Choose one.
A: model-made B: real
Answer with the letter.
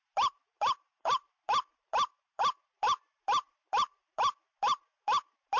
A